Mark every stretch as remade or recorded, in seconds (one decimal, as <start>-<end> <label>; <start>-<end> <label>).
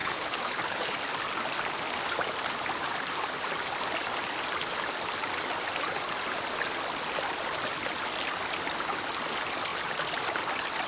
0.0-1.0 remade; 1.0-10.9 recorded